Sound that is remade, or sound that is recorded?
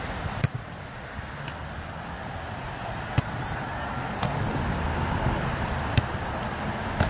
recorded